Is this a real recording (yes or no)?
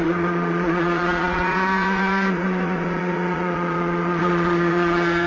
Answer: no